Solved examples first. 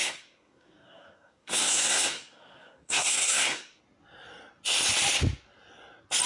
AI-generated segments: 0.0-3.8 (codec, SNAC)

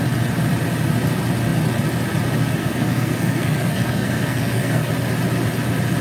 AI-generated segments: 2.6-4.9 (codec, SNAC)

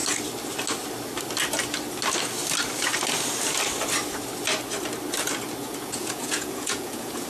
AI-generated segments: 5.6-7.3 (vocoder, Vocos)

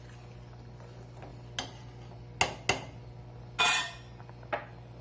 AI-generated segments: none